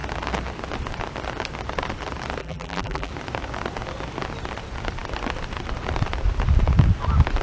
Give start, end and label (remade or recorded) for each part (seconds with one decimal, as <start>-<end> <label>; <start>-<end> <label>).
0.0-2.4 recorded; 2.4-3.1 remade; 3.1-7.4 recorded